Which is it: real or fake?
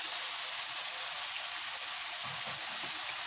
real